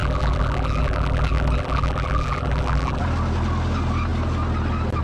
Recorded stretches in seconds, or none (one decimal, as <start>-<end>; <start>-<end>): 3.0-5.0